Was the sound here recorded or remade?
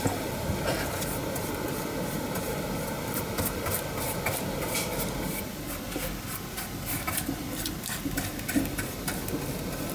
recorded